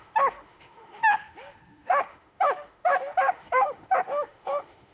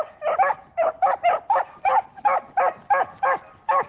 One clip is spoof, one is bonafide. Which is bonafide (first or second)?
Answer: second